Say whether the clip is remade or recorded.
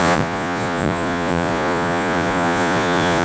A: remade